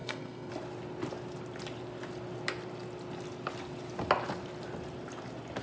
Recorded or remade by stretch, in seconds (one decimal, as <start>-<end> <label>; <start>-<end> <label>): 0.0-0.5 remade; 0.5-5.6 recorded